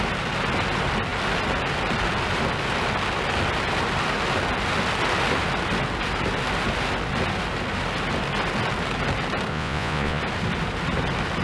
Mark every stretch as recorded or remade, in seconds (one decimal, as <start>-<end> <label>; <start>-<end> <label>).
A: 0.0-9.5 recorded; 9.5-10.2 remade; 10.2-11.4 recorded